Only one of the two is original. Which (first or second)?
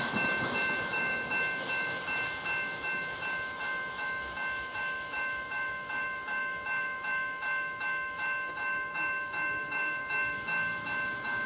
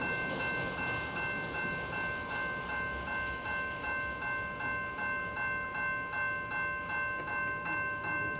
second